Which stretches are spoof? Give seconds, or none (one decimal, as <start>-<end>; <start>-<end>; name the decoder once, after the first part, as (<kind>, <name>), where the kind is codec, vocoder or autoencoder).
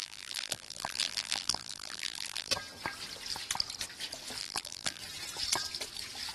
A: 0.0-2.5 (vocoder, BigVGAN v2); 4.4-5.0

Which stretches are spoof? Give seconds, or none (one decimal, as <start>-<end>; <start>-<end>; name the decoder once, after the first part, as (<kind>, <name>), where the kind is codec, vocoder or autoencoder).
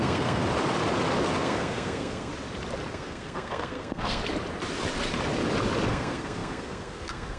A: 0.0-0.4 (codec, SNAC); 1.4-2.3; 2.9-4.2; 5.9-7.4